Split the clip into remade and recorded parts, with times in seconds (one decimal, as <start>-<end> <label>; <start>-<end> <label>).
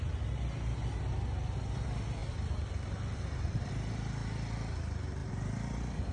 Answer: 0.0-2.2 recorded; 2.2-3.7 remade; 3.7-6.1 recorded